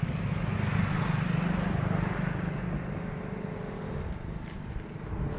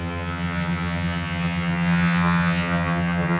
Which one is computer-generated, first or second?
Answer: second